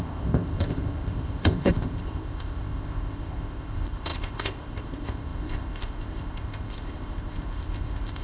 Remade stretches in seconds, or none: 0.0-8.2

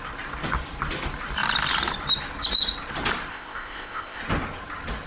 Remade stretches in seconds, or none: 3.3-4.2